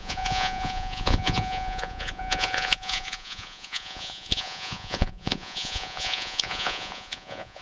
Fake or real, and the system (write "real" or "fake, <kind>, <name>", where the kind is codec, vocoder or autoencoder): fake, vocoder, Vocos